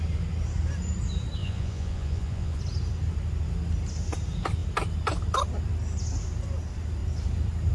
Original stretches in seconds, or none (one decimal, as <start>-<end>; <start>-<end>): 0.0-1.4; 2.6-7.7